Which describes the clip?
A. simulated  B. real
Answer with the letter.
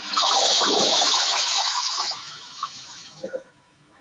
A